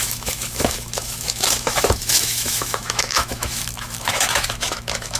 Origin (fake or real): fake